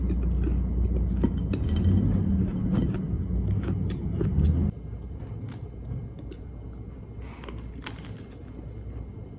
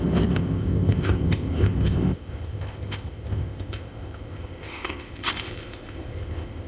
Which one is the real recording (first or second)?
first